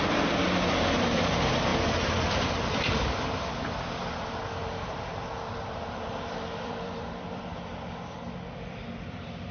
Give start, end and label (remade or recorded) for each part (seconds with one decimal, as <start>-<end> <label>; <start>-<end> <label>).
0.0-1.7 remade; 1.7-2.5 recorded; 2.5-7.5 remade; 7.5-8.9 recorded; 8.9-9.5 remade